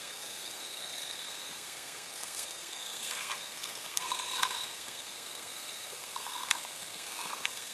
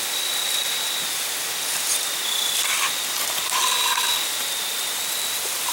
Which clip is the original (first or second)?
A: second